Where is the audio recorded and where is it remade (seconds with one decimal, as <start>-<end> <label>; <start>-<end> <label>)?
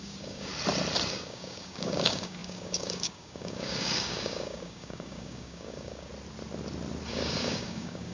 0.0-0.5 remade; 0.5-1.1 recorded; 1.1-6.1 remade; 6.1-7.1 recorded; 7.1-8.1 remade